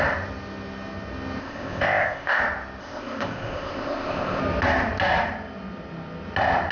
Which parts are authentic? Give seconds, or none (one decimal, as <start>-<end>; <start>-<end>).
0.0-1.4; 2.4-2.8; 4.4-6.7